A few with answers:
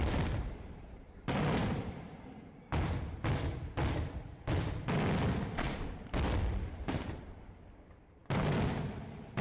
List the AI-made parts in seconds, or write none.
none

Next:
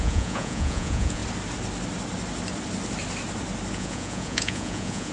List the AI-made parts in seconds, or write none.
0.0-1.2 (vocoder, Vocos); 3.7-5.1

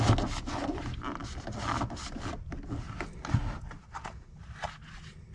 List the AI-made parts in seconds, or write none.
none

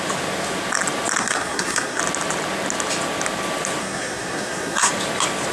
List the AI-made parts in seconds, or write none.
1.2-2.0 (codec, SNAC); 3.8-4.9

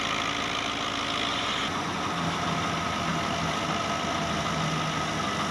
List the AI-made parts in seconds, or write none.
1.3-2.0 (vocoder, Vocos)

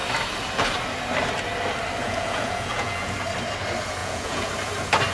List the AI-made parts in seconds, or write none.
2.0-3.1 (vocoder, Vocos); 4.0-4.5

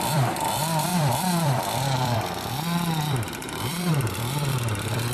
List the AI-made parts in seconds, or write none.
0.0-5.1 (vocoder, BigVGAN v2)

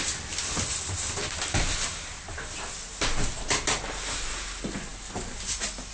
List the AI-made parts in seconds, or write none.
none